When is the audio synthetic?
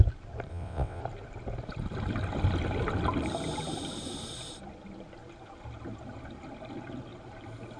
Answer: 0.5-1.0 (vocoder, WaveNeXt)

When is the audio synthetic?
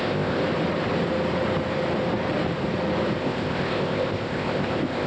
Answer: 0.0-0.4 (codec, ZipCodec); 3.2-5.1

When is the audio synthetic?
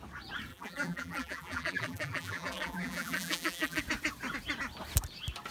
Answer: 0.5-3.8 (vocoder, BigVGAN v2)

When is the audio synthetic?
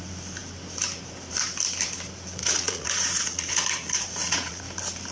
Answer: 2.4-4.6 (vocoder, Vocos)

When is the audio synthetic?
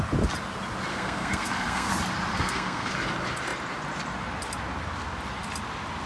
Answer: 0.9-1.9 (codec, SNAC); 2.3-2.9